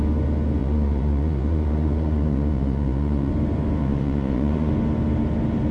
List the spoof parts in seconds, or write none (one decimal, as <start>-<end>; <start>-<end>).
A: 0.6-3.3; 3.8-4.7